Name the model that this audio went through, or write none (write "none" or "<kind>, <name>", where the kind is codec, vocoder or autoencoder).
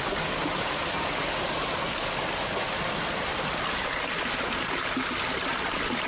none